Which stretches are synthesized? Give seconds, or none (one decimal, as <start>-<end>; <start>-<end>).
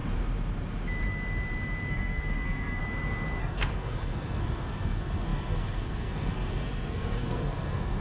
1.9-2.8; 3.4-8.0